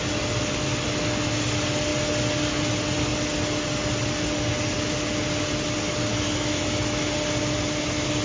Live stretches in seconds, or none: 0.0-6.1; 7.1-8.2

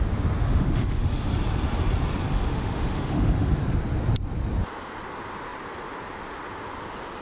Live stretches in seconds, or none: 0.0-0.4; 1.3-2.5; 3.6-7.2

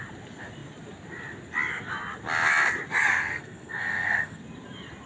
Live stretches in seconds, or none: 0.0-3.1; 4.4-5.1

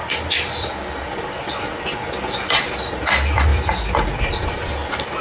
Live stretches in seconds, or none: 0.0-5.2